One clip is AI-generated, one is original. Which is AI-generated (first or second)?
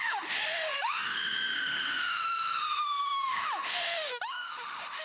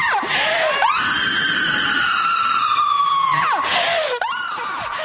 first